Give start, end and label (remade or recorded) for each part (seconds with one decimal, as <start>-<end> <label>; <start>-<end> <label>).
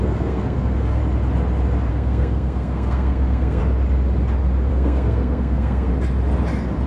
0.0-1.0 remade; 1.0-1.9 recorded; 1.9-3.6 remade; 3.6-4.7 recorded; 4.7-5.9 remade; 5.9-6.9 recorded